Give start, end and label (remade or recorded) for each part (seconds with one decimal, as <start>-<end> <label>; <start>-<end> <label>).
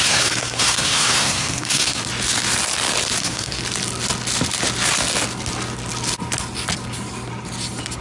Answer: 0.0-2.0 remade; 2.0-3.2 recorded; 3.2-3.6 remade; 3.6-8.0 recorded